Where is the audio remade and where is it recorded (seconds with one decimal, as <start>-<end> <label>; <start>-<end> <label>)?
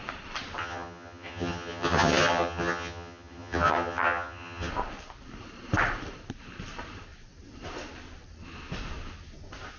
0.0-0.6 recorded; 0.6-4.7 remade; 4.7-9.8 recorded